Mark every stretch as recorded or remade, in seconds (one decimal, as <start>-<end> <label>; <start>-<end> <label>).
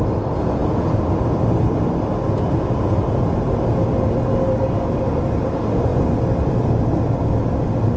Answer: 0.0-8.0 recorded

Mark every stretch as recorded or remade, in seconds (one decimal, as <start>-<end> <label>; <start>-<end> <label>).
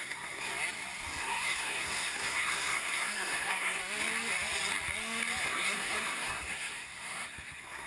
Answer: 0.0-0.5 remade; 0.5-1.2 recorded; 1.2-3.8 remade; 3.8-5.4 recorded; 5.4-7.9 remade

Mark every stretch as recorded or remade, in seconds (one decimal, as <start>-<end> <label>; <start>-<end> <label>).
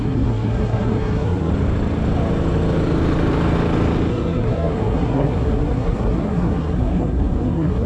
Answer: 0.0-1.5 remade; 1.5-4.1 recorded; 4.1-7.9 remade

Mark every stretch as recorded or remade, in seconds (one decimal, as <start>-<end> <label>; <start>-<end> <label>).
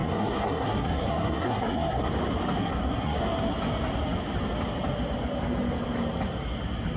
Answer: 0.0-2.1 remade; 2.1-2.6 recorded; 2.6-3.2 remade; 3.2-7.0 recorded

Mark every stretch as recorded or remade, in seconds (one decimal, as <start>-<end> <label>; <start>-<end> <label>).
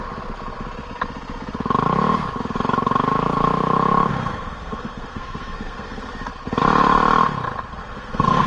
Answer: 0.0-4.1 recorded; 4.1-6.1 remade; 6.1-7.8 recorded; 7.8-8.5 remade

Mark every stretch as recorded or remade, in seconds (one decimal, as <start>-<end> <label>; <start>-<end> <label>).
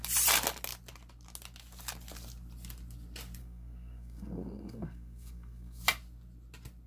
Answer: 0.0-3.4 recorded; 3.4-5.8 remade; 5.8-6.9 recorded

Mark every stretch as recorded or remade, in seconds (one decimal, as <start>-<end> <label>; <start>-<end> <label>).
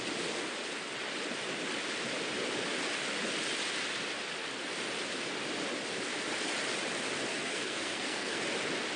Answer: 0.0-7.3 recorded; 7.3-8.4 remade; 8.4-9.0 recorded